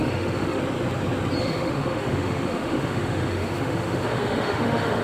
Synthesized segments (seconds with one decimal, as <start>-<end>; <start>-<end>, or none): 0.0-0.6; 1.4-5.0